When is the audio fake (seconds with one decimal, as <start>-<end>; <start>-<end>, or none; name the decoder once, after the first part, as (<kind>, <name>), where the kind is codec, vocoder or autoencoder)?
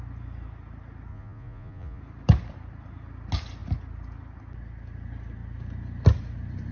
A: 1.1-2.0 (vocoder, Vocos)